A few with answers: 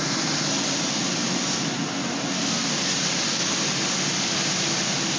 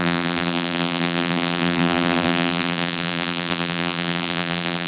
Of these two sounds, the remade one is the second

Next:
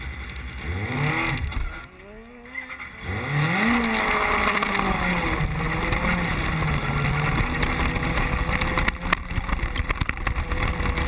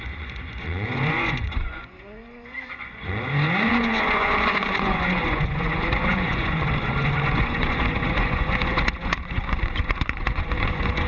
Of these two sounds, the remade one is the second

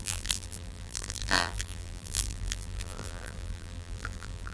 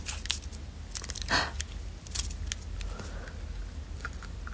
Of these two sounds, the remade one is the first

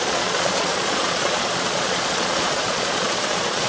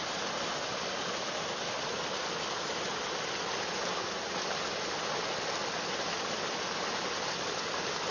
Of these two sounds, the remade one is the first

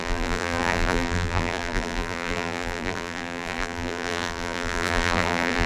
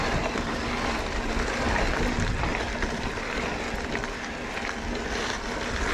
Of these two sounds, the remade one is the first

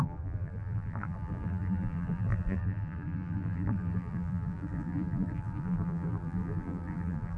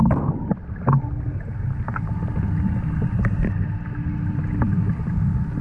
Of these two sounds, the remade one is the first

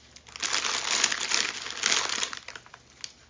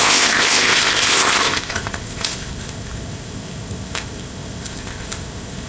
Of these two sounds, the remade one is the second